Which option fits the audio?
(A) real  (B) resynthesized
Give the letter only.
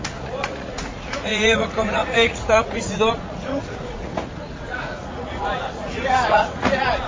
B